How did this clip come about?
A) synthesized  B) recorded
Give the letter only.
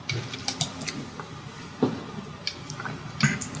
A